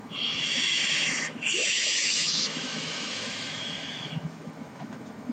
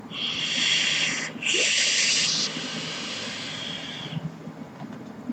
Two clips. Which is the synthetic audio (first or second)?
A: first